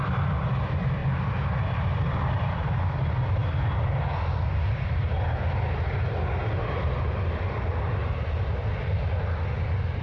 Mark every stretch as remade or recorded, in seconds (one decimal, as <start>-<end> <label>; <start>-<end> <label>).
0.0-10.0 recorded